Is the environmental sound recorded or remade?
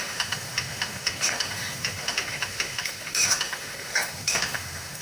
remade